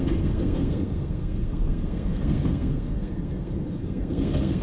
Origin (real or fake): fake